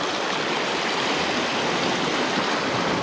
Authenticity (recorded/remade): recorded